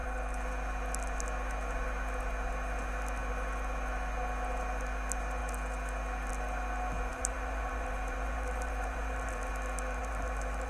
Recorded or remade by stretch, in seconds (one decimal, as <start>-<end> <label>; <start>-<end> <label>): 0.0-7.1 recorded; 7.1-9.5 remade; 9.5-10.0 recorded; 10.0-10.7 remade